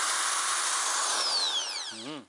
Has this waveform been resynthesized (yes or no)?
no